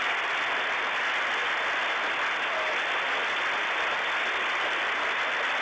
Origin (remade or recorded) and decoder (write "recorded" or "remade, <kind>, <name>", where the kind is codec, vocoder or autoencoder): recorded